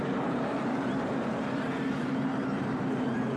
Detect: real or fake fake